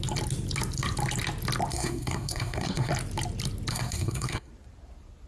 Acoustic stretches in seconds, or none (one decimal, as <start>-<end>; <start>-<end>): 0.0-1.7; 2.9-3.7; 4.5-5.3